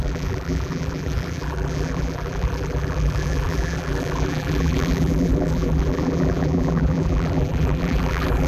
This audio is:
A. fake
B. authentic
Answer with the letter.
A